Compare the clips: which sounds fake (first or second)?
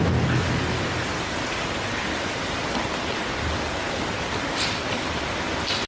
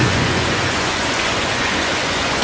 second